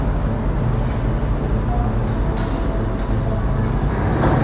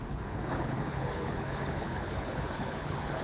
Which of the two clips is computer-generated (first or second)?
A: second